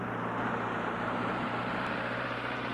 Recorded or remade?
remade